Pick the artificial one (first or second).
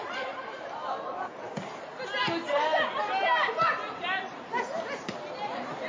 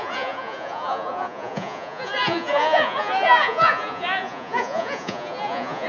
second